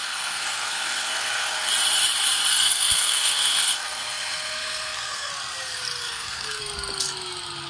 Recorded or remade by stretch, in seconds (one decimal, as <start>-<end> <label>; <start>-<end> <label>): 0.0-1.7 remade; 1.7-2.5 recorded; 2.5-5.3 remade; 5.3-6.0 recorded; 6.0-6.6 remade; 6.6-7.7 recorded